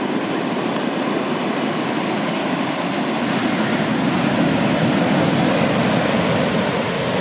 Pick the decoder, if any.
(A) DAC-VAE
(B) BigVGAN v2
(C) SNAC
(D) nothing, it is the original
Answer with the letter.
D